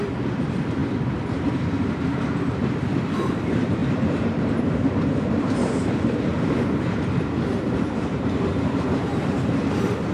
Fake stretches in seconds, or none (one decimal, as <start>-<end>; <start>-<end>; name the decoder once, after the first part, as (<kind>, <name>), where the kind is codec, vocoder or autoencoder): 0.0-6.3 (vocoder, BigVGAN v2); 7.5-10.1